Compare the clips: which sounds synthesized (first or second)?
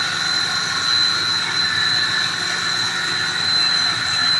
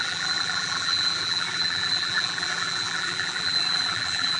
second